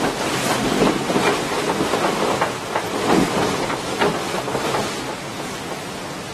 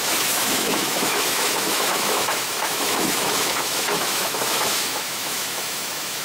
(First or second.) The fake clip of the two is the second